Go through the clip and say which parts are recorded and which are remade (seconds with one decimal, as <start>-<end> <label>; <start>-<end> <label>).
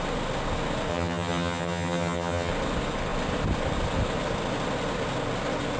0.0-0.9 recorded; 0.9-2.5 remade; 2.5-5.8 recorded